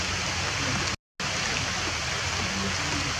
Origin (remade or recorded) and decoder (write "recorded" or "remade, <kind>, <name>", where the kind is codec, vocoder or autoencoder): recorded